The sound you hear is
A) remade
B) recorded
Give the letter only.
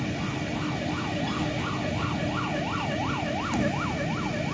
B